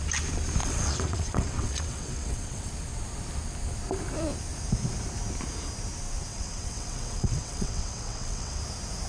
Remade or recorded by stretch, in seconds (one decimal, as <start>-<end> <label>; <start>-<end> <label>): 0.0-0.6 recorded; 0.6-2.7 remade; 2.7-6.3 recorded; 6.3-8.6 remade; 8.6-9.1 recorded